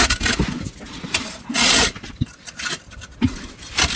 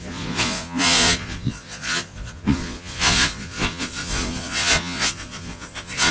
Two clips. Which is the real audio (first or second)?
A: first